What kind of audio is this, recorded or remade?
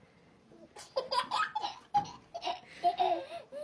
recorded